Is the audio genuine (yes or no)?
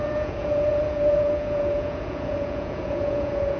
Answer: no